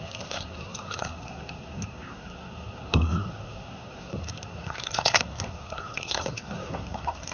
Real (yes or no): no